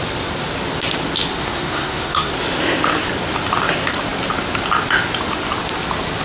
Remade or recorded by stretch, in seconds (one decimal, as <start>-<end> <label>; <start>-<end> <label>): 0.0-1.4 recorded; 1.4-2.3 remade; 2.3-6.2 recorded